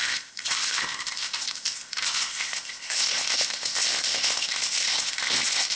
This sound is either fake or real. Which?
fake